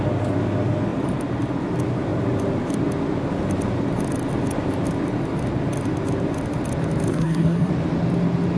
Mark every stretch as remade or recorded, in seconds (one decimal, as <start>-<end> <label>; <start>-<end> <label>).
0.0-7.1 recorded; 7.1-7.7 remade; 7.7-8.6 recorded